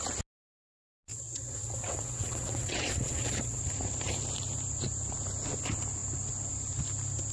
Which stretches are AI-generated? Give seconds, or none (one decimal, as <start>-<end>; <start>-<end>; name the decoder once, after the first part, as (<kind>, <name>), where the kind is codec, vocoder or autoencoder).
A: 1.1-3.6 (vocoder, WaveNeXt)